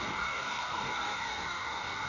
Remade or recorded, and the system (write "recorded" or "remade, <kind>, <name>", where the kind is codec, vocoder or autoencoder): remade, codec, DAC